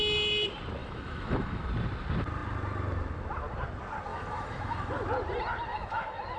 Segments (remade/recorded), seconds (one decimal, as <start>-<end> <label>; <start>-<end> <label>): 0.0-0.8 recorded; 0.8-1.7 remade; 1.7-4.1 recorded; 4.1-4.9 remade; 4.9-5.7 recorded; 5.7-6.4 remade